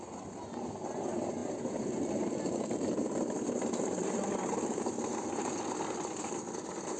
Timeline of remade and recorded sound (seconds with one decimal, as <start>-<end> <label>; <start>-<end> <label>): 0.0-7.0 recorded